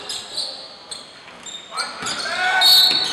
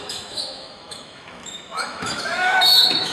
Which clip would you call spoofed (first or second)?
second